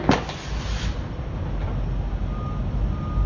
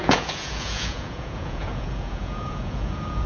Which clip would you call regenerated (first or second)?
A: second